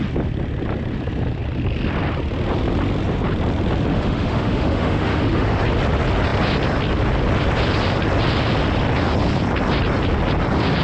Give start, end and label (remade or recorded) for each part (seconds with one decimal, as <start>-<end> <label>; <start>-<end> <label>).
0.0-3.9 recorded; 3.9-5.6 remade; 5.6-10.8 recorded